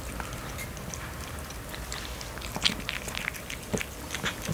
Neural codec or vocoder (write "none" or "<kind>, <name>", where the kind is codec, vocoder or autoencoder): none